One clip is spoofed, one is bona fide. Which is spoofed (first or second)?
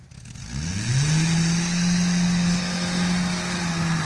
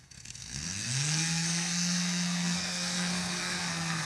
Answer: second